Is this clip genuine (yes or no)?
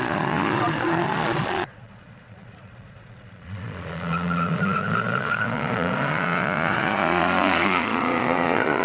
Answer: no